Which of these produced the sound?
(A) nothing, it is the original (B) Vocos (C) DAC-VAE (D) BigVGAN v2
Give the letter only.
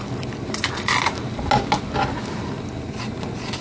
A